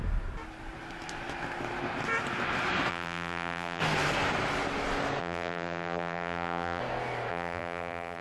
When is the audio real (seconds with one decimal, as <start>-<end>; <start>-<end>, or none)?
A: 0.0-2.9; 3.8-5.2; 6.8-7.3

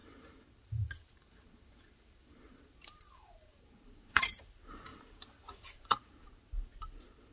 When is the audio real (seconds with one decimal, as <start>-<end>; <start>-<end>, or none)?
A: 4.4-4.9; 6.3-7.3

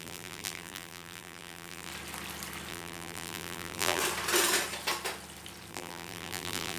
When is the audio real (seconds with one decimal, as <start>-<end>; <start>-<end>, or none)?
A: 1.9-2.7; 4.0-5.7

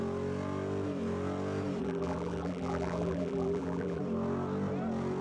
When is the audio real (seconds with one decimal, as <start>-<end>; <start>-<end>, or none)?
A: 0.0-1.8; 4.0-5.2

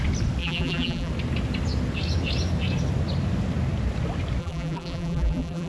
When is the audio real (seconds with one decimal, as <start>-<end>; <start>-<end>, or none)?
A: 0.0-0.4; 1.1-4.4

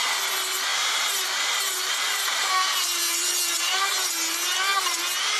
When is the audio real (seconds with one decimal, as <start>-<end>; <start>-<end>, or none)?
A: 0.0-0.7; 3.9-5.4